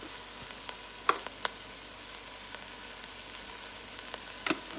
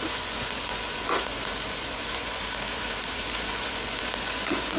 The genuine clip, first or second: first